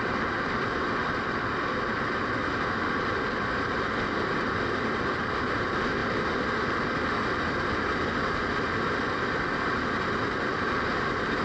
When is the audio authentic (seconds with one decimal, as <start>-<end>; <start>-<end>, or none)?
0.0-11.4